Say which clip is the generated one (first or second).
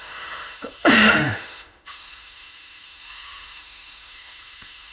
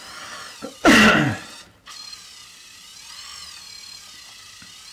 first